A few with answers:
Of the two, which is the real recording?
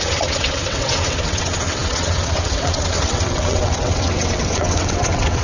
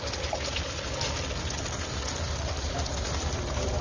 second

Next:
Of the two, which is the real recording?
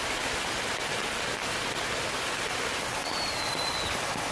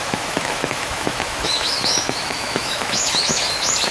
first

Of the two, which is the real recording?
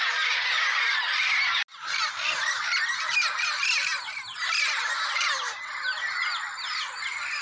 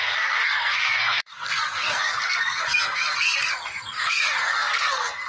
first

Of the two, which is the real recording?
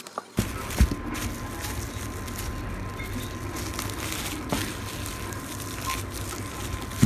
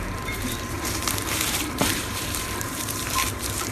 first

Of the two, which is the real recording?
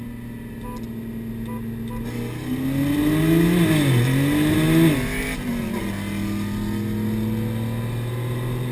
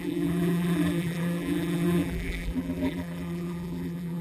first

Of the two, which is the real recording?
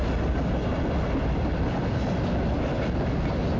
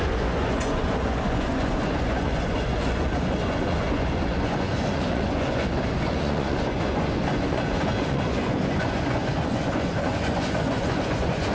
first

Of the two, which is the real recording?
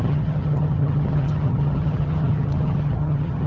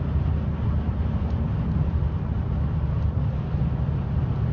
second